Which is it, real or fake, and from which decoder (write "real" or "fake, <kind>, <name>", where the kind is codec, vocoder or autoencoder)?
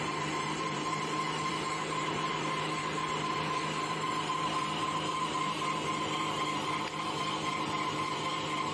fake, vocoder, BigVGAN v2